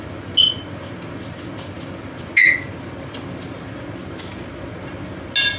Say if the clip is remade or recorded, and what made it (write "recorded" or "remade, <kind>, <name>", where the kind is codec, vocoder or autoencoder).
recorded